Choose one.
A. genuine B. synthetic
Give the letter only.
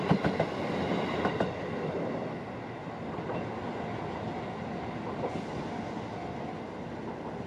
A